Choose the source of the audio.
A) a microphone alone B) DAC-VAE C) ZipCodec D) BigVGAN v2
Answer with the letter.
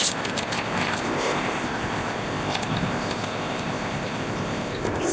C